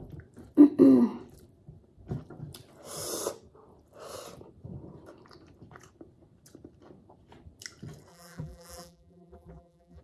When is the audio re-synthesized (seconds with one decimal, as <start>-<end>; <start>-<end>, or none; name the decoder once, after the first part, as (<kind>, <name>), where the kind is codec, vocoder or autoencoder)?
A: 8.1-10.0 (vocoder, BigVGAN v2)